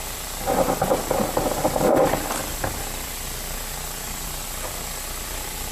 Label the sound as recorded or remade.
remade